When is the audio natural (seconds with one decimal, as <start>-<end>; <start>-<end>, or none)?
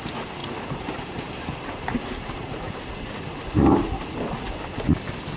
0.0-0.4; 2.8-5.4